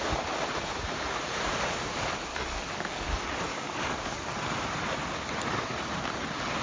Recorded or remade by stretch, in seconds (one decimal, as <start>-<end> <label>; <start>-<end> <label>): 0.0-2.3 recorded; 2.3-3.1 remade; 3.1-3.5 recorded; 3.5-4.3 remade; 4.3-6.6 recorded